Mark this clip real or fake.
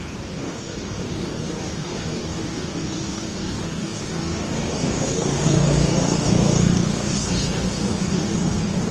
fake